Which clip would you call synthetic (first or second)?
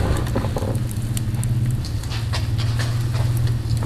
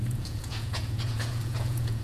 second